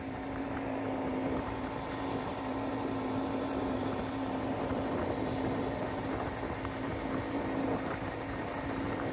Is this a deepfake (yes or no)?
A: yes